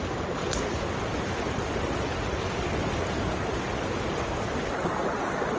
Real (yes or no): yes